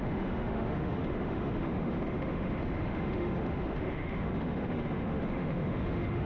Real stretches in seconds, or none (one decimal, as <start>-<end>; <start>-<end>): none